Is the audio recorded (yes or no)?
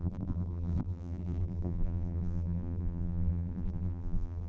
no